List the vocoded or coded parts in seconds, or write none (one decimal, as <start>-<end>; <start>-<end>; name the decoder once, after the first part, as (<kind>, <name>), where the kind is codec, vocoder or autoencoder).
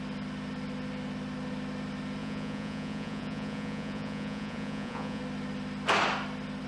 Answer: 2.2-5.2 (vocoder, Vocos)